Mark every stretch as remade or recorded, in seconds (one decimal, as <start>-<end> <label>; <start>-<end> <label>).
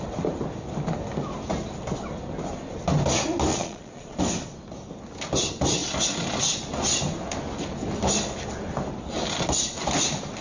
0.0-3.5 recorded; 3.5-4.2 remade; 4.2-10.4 recorded